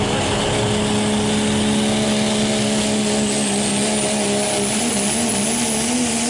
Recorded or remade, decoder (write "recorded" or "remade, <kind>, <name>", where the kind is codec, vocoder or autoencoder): recorded